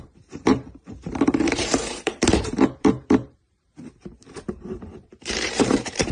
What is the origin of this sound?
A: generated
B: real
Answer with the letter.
A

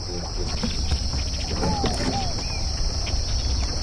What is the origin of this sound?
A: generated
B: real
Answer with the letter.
B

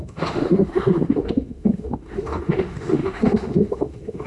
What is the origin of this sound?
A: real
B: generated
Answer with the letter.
B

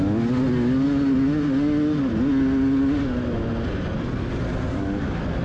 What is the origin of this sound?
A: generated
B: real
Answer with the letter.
B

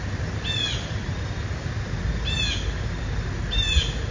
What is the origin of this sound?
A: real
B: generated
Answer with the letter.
A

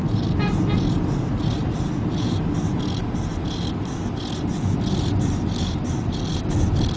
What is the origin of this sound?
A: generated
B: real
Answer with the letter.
B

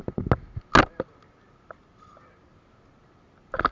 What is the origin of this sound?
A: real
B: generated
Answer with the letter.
A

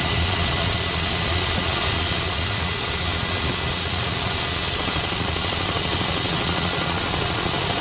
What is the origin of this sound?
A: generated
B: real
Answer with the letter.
A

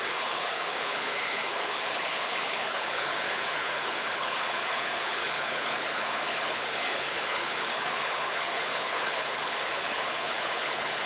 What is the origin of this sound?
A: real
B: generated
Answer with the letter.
B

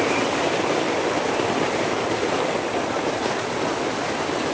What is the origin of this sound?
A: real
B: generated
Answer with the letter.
A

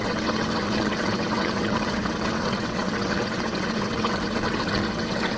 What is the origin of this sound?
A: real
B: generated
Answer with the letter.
B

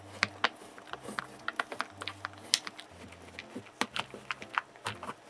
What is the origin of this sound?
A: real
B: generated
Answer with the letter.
A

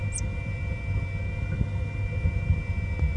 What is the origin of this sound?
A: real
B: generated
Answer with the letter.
A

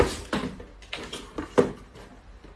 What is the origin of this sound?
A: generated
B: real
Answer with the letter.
B